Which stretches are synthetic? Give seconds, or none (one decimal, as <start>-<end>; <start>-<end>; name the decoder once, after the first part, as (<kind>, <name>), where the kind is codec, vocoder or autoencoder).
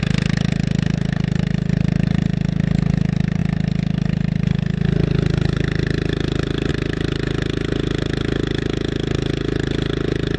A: none